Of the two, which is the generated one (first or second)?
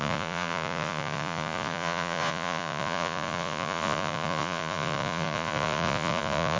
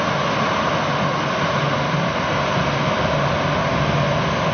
first